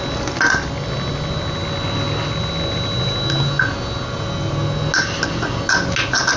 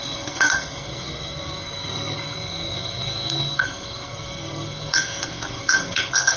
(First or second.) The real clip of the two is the first